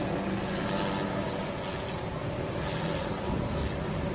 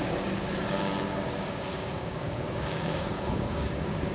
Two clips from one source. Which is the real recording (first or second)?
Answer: first